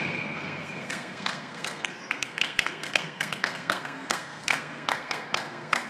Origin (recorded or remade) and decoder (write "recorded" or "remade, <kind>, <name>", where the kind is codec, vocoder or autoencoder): remade, codec, SNAC